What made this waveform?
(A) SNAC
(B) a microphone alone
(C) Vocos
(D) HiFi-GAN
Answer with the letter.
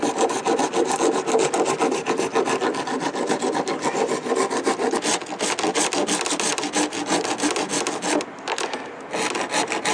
B